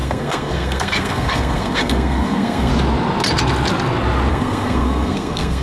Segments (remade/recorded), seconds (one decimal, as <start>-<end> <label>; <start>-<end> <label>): 0.0-2.7 remade; 2.7-4.3 recorded; 4.3-5.6 remade

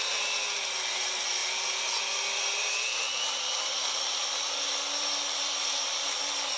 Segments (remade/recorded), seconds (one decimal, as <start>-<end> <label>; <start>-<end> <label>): 0.0-6.6 recorded

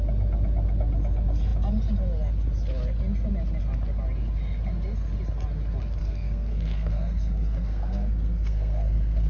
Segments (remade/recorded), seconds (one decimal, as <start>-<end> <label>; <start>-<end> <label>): 0.0-6.0 recorded; 6.0-9.3 remade